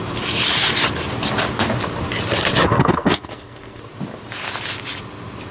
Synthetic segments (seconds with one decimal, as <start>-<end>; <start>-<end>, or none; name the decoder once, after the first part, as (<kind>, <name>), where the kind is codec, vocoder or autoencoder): 2.7-3.8 (codec, SNAC)